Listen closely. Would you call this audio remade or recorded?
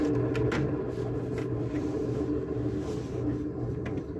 recorded